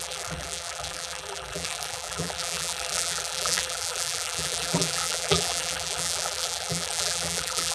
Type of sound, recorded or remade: remade